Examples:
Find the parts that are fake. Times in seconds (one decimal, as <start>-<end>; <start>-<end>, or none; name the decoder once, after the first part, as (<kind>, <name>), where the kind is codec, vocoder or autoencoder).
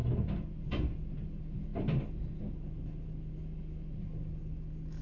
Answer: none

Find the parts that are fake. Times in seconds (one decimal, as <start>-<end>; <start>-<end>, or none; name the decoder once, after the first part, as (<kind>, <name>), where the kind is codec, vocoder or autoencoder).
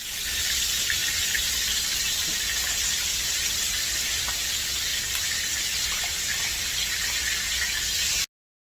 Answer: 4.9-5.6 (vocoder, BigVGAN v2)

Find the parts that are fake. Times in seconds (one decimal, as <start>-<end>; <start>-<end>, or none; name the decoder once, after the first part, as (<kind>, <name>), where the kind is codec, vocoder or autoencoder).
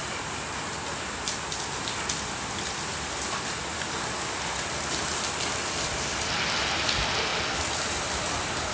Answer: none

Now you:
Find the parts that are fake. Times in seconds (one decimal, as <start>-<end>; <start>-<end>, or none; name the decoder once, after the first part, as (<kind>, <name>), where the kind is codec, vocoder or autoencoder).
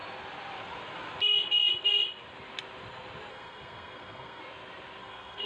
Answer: 3.3-4.4 (codec, SNAC); 5.0-5.5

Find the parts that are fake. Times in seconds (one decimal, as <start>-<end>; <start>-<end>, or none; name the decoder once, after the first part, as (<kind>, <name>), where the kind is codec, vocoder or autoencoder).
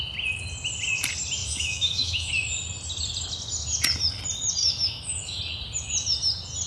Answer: 1.4-2.3 (autoencoder, DAC-VAE); 4.6-5.4